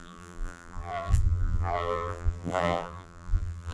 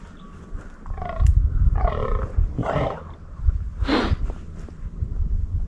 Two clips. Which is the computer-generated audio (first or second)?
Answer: first